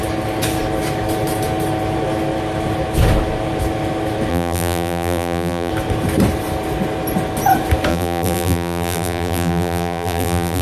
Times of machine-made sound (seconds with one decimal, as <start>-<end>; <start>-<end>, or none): 4.3-5.7; 7.9-10.6